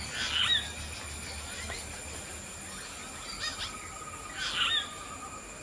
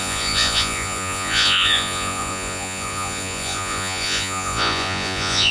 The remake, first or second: second